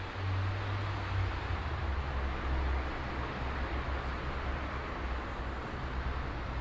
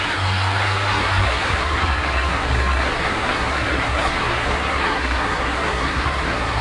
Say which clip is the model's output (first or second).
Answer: second